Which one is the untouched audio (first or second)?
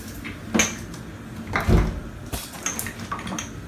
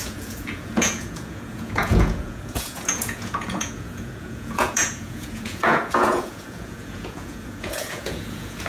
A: first